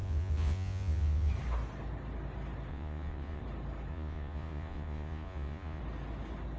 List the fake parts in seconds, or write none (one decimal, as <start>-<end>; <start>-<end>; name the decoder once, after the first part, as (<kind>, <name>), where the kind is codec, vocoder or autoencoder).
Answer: 0.0-1.3 (vocoder, Vocos); 2.7-3.4; 3.9-5.8

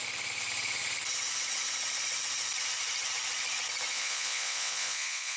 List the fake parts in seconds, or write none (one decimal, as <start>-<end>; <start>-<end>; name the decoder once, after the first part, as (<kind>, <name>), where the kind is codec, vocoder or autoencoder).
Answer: 3.9-5.4 (vocoder, Vocos)

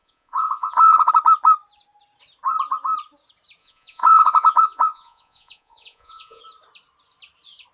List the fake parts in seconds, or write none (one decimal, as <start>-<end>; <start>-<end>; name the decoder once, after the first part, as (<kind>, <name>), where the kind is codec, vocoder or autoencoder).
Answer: 0.0-1.1 (vocoder, Vocos); 3.6-6.4

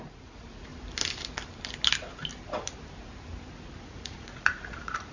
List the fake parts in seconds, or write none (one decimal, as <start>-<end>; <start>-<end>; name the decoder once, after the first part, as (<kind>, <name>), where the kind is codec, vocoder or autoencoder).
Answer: 0.0-0.7 (vocoder, Vocos); 3.8-5.1

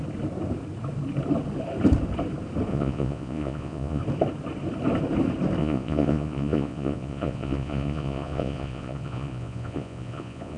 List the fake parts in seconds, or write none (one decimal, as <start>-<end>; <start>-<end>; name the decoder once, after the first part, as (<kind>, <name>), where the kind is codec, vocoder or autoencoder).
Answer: 2.7-4.0 (vocoder, Vocos); 5.6-10.6

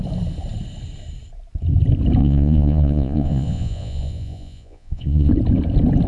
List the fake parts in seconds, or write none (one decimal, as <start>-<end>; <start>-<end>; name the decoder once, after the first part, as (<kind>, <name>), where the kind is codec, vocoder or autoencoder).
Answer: 2.2-5.3 (vocoder, Vocos)

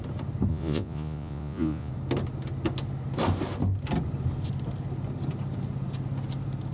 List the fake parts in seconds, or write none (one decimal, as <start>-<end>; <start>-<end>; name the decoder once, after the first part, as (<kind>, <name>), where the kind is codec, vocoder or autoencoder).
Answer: 0.5-1.9 (vocoder, Vocos)

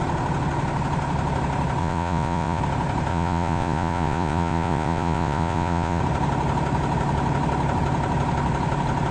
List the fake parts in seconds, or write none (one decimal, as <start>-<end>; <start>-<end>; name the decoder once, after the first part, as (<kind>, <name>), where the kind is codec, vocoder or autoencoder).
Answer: 1.8-2.6 (vocoder, Vocos); 3.1-6.0